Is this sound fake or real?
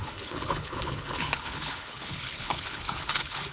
fake